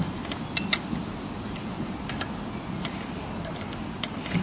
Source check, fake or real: real